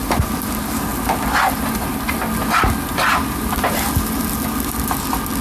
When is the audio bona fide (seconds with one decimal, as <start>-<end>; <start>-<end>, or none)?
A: 0.9-1.6; 2.4-5.4